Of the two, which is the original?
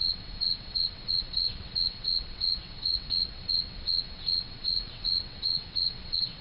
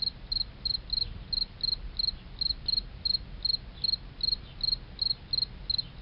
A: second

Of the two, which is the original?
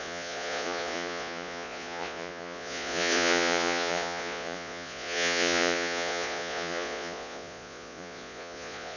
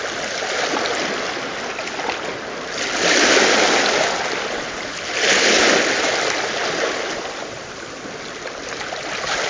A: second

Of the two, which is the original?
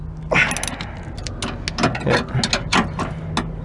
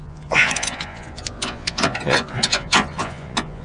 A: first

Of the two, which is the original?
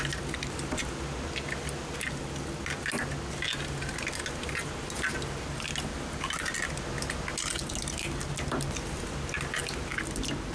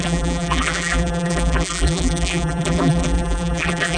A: first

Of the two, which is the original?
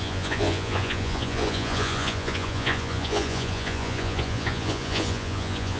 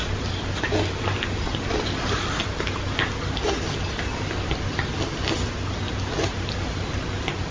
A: second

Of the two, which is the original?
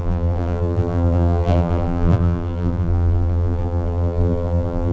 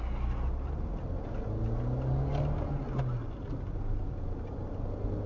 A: second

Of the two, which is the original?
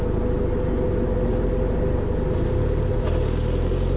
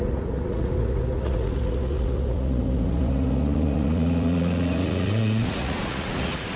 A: first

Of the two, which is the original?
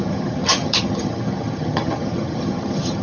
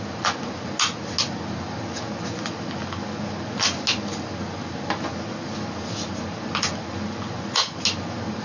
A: second